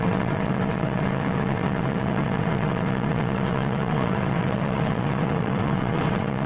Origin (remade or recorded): remade